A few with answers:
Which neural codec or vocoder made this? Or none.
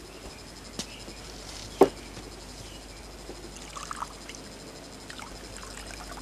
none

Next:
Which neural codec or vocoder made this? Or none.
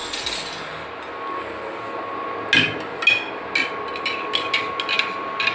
none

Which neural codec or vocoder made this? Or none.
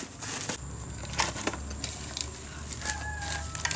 none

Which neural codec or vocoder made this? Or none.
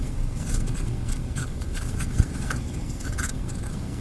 codec, SNAC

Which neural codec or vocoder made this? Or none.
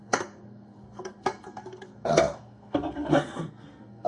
codec, SNAC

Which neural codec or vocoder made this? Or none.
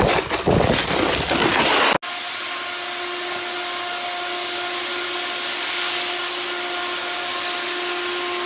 none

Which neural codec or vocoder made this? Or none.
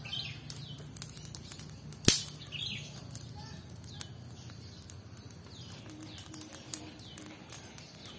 none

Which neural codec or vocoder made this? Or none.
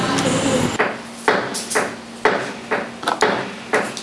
none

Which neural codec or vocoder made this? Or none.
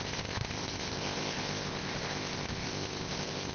codec, ZipCodec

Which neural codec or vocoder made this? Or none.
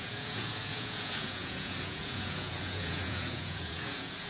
vocoder, Vocos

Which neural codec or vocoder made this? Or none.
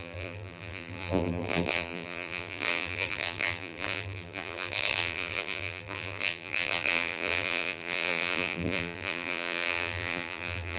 vocoder, BigVGAN v2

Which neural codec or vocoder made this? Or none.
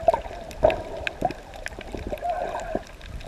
none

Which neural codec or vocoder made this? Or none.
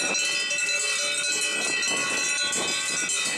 none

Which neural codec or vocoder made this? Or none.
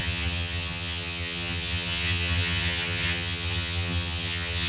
vocoder, HiFi-GAN